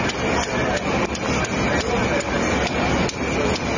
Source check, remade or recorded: recorded